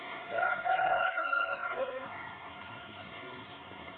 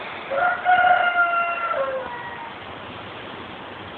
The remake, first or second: first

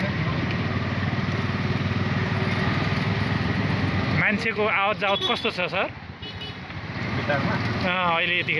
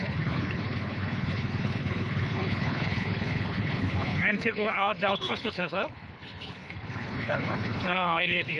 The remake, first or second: second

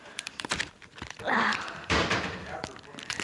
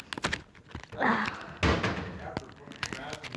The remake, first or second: first